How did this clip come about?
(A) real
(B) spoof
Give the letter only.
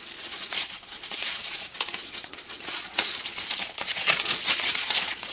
B